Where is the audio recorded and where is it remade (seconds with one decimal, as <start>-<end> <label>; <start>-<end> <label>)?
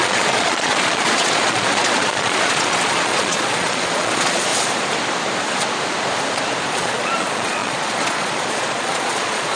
0.0-4.5 remade; 4.5-6.7 recorded; 6.7-9.6 remade